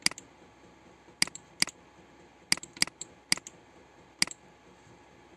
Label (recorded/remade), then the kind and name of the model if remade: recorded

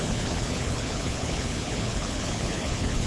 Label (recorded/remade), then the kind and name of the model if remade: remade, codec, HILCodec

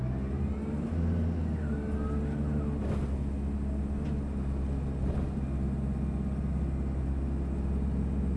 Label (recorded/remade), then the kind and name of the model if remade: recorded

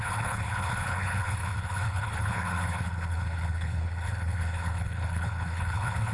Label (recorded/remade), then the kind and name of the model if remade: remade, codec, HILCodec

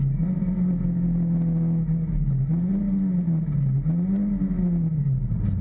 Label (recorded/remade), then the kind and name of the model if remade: recorded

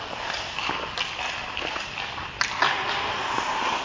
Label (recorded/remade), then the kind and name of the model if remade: recorded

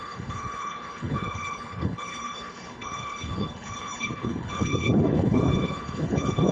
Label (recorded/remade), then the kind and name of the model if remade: remade, codec, HILCodec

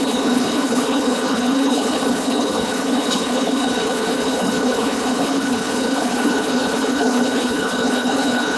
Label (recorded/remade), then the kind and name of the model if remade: remade, codec, HILCodec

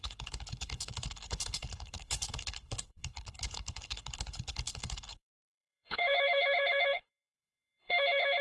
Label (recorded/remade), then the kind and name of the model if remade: remade, codec, HILCodec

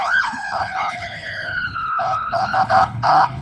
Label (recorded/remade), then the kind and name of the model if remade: remade, codec, HILCodec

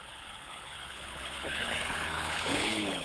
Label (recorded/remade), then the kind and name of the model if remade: remade, codec, HILCodec